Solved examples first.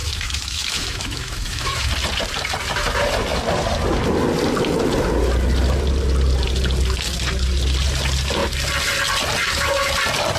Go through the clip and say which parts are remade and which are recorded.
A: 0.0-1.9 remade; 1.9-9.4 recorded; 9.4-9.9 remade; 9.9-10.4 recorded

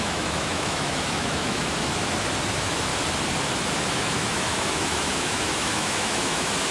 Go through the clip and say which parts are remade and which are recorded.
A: 0.0-2.0 remade; 2.0-2.5 recorded; 2.5-2.9 remade; 2.9-3.8 recorded; 3.8-6.7 remade

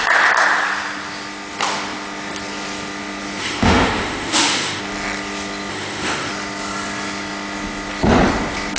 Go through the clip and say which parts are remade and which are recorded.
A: 0.0-3.4 recorded; 3.4-4.8 remade; 4.8-5.7 recorded; 5.7-6.3 remade; 6.3-8.8 recorded

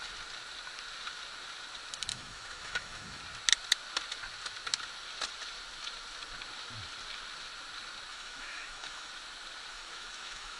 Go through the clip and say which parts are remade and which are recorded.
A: 0.0-2.1 recorded; 2.1-3.2 remade; 3.2-8.1 recorded; 8.1-9.1 remade; 9.1-9.7 recorded; 9.7-10.6 remade

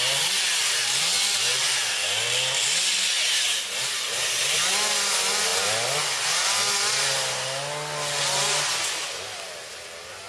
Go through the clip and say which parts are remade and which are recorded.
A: 0.0-10.3 recorded

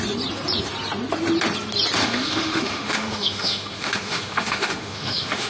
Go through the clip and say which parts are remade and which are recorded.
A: 0.0-2.0 recorded; 2.0-5.5 remade

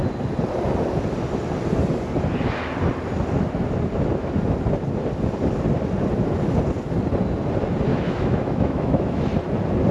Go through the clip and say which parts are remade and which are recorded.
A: 0.0-7.9 recorded; 7.9-9.2 remade; 9.2-9.9 recorded

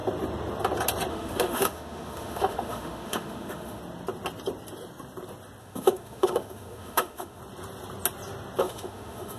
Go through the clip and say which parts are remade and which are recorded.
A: 0.0-1.1 recorded; 1.1-3.8 remade; 3.8-5.6 recorded; 5.6-7.4 remade; 7.4-8.6 recorded; 8.6-9.4 remade